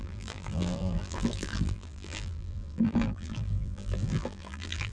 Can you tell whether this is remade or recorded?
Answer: remade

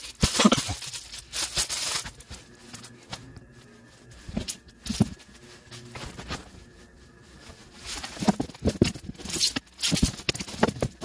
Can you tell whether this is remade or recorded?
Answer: recorded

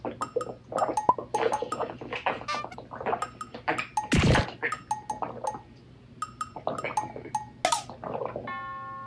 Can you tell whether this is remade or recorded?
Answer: recorded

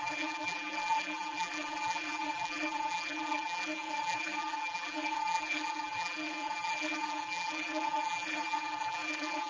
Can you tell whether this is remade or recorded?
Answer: remade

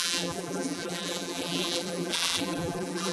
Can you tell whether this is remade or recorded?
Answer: remade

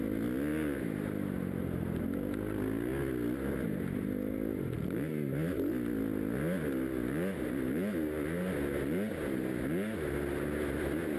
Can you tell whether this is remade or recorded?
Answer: recorded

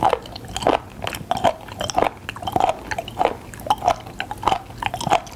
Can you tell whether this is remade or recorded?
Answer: recorded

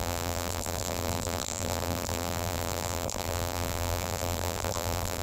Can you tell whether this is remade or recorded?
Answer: remade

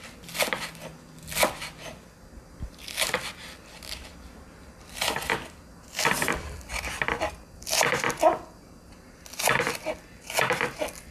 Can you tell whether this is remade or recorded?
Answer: recorded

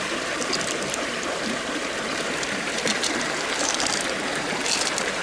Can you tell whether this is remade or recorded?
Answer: remade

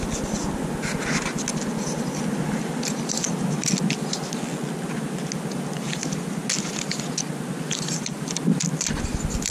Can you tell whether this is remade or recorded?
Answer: recorded